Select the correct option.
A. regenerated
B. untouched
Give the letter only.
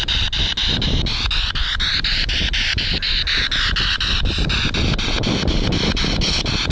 B